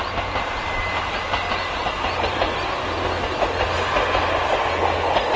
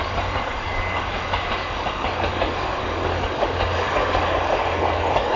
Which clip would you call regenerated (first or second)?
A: second